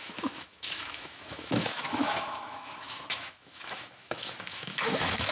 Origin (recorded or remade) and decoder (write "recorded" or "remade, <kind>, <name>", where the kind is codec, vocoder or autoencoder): remade, autoencoder, DAC-VAE